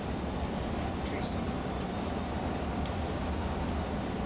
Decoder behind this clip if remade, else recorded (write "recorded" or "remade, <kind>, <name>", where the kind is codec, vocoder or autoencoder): recorded